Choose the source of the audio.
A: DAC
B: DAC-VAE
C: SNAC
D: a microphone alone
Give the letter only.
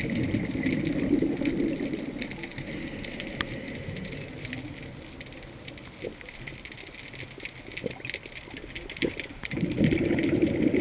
D